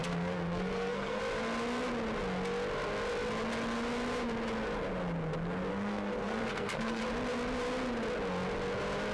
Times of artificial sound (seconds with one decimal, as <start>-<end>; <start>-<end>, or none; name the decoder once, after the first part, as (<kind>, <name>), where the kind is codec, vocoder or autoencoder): 0.0-1.2 (codec, SNAC); 5.7-7.0